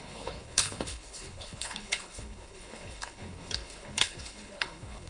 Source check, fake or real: fake